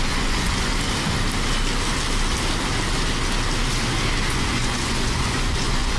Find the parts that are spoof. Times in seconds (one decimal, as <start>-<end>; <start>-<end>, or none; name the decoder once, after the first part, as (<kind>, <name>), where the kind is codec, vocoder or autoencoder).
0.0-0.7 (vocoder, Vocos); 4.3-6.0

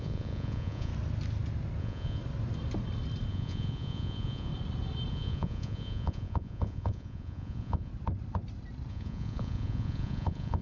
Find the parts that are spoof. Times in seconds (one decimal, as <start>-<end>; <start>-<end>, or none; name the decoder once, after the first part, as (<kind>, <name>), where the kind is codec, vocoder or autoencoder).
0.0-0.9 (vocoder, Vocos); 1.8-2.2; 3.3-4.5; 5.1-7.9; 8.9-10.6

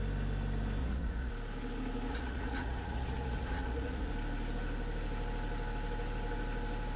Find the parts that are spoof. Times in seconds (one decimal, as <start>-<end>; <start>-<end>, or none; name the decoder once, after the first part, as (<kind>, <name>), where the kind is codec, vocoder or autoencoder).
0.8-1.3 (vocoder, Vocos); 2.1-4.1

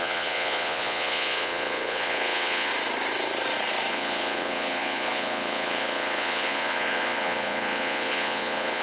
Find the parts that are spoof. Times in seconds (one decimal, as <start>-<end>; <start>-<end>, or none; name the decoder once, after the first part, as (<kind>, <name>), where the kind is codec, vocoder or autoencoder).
0.0-2.7 (vocoder, Vocos); 3.9-8.8

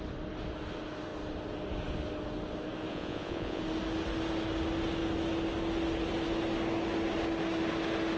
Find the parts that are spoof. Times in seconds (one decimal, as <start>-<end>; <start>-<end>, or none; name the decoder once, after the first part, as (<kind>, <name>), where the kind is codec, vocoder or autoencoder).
2.9-3.6 (vocoder, Vocos)

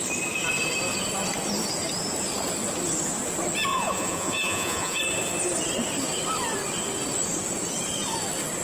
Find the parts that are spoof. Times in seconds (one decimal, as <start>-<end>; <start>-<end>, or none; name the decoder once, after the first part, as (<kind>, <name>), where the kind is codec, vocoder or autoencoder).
3.7-5.0 (vocoder, Vocos)

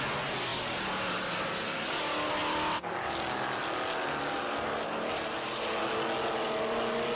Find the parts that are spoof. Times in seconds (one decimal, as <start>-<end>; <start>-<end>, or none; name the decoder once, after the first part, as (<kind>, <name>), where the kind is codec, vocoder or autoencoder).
none